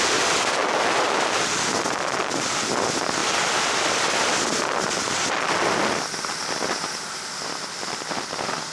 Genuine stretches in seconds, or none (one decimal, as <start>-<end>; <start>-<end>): 0.0-8.7